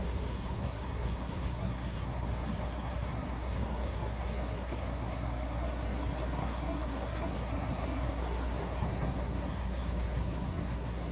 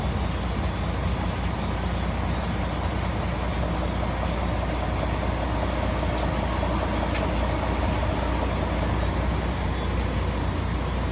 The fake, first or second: first